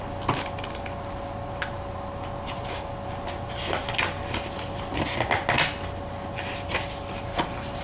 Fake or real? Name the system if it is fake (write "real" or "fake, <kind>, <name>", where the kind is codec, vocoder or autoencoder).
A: real